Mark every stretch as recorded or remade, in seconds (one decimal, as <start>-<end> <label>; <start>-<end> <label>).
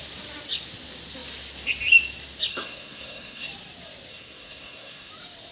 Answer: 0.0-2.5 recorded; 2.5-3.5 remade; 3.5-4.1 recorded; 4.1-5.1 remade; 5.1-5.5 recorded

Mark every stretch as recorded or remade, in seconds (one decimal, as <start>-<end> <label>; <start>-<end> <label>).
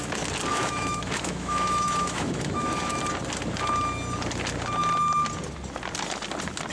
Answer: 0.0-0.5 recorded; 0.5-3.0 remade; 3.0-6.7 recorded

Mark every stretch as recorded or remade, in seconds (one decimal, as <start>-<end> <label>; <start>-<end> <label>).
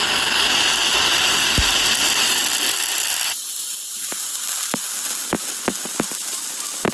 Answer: 0.0-6.9 recorded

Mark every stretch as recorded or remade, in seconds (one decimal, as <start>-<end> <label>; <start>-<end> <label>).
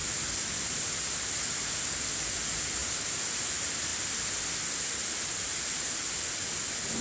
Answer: 0.0-2.8 recorded; 2.8-3.5 remade; 3.5-3.9 recorded; 3.9-4.5 remade; 4.5-7.0 recorded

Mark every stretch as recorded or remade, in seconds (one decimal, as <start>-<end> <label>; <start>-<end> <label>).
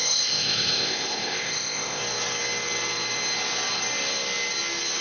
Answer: 0.0-2.0 remade; 2.0-5.0 recorded